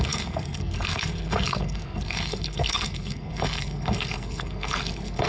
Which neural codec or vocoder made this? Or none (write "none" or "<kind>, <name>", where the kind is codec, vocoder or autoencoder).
codec, SNAC